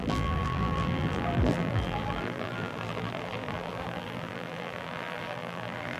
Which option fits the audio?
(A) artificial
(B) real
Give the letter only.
A